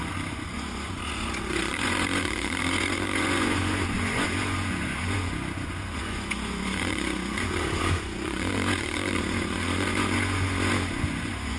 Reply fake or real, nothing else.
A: fake